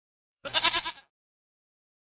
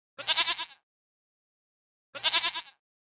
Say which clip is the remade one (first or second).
first